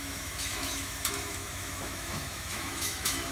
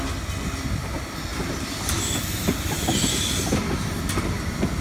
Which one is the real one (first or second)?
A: second